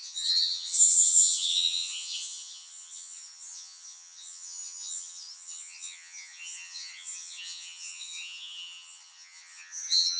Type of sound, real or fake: fake